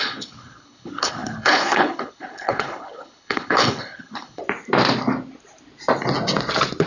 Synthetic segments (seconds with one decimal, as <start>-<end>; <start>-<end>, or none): 0.0-4.4